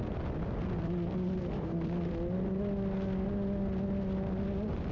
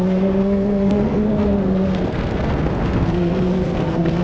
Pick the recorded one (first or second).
first